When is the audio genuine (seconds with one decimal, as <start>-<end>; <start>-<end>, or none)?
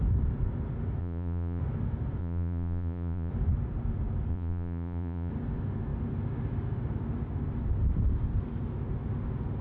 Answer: 0.0-1.0; 1.6-2.2; 3.3-4.3; 5.3-9.6